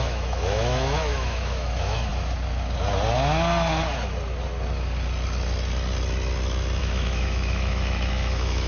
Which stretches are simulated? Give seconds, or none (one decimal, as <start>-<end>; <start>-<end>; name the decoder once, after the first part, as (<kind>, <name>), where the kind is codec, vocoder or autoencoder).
0.0-2.1 (autoencoder, DAC-VAE); 6.8-8.7